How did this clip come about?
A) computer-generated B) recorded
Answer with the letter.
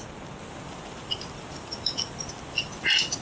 B